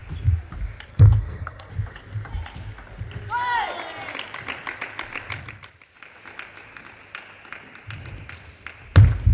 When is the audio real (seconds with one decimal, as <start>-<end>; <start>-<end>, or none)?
0.0-0.9; 1.7-9.3